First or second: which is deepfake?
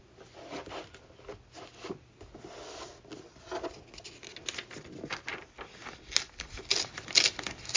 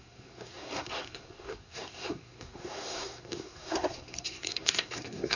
second